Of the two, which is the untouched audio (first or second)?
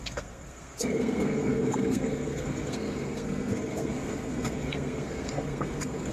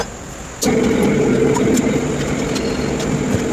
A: second